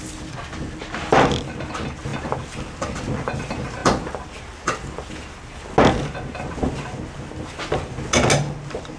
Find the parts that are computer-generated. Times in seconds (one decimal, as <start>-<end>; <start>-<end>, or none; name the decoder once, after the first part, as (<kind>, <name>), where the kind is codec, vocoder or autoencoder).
none